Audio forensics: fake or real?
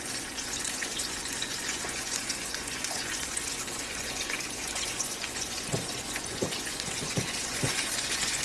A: fake